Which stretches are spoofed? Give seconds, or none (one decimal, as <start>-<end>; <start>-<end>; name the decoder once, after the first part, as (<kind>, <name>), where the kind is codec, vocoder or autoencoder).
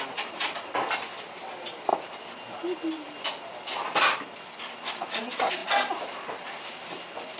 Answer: none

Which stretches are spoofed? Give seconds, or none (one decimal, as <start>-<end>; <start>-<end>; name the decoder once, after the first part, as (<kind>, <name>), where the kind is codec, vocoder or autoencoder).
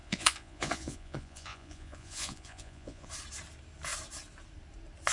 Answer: 0.0-3.1 (vocoder, Vocos)